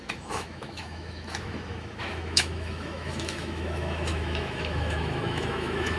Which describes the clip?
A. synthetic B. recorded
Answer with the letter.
A